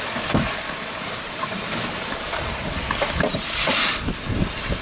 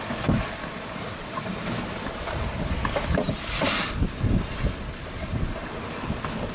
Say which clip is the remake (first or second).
first